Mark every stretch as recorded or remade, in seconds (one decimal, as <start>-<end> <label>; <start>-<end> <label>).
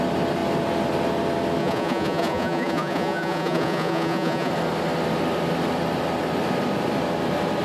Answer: 0.0-1.6 recorded; 1.6-4.5 remade; 4.5-7.6 recorded